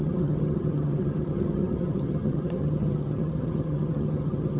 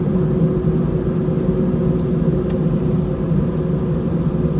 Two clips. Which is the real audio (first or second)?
second